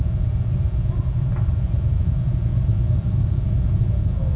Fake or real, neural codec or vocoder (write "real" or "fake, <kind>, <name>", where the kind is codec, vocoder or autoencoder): real